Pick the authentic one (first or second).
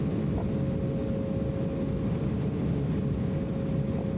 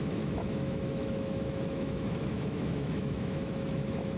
first